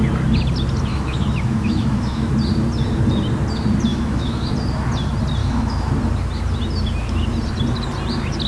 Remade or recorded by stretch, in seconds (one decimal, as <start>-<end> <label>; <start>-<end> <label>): 0.0-0.9 recorded; 0.9-2.3 remade; 2.3-3.9 recorded; 3.9-4.5 remade; 4.5-5.4 recorded; 5.4-5.9 remade; 5.9-8.5 recorded